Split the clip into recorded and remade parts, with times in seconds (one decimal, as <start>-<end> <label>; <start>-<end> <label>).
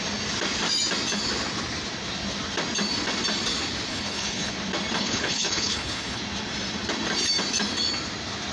0.0-3.9 recorded; 3.9-4.5 remade; 4.5-5.0 recorded; 5.0-6.2 remade; 6.2-8.5 recorded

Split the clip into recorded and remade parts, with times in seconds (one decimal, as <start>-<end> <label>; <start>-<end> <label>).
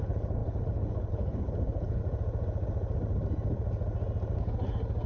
0.0-2.0 remade; 2.0-5.1 recorded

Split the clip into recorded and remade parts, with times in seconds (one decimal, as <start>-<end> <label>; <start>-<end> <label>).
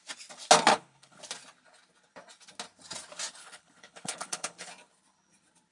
0.0-0.7 recorded; 0.7-1.2 remade; 1.2-3.4 recorded; 3.4-4.7 remade; 4.7-5.7 recorded